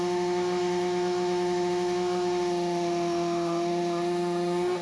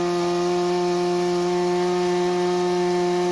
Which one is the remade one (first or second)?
first